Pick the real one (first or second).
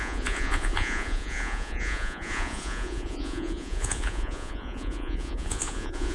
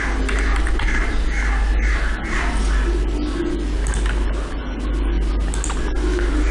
second